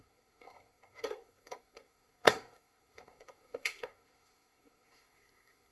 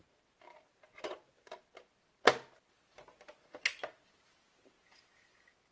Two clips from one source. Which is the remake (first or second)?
first